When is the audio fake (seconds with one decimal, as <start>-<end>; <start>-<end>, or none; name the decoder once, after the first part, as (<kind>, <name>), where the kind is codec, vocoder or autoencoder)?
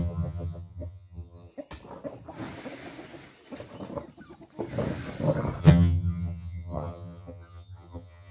0.0-1.5 (vocoder, HiFi-GAN); 5.6-8.3